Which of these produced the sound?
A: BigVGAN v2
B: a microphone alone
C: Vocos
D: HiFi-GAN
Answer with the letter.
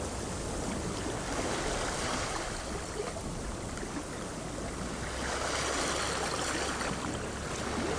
B